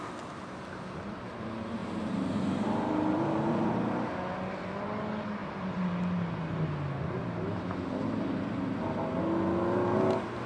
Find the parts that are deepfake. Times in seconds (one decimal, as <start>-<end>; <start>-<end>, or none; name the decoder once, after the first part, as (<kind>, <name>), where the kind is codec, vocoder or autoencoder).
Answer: 1.8-3.7 (vocoder, BigVGAN v2)